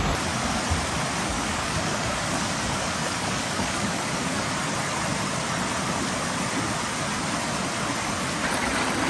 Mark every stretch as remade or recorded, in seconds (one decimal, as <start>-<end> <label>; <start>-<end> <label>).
0.0-1.2 recorded; 1.2-4.5 remade; 4.5-9.1 recorded